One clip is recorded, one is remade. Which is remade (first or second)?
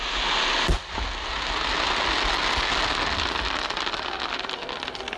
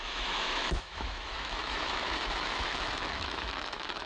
second